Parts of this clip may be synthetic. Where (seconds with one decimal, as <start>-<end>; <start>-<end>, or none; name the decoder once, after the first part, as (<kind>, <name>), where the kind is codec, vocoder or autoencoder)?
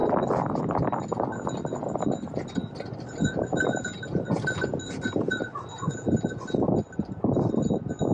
none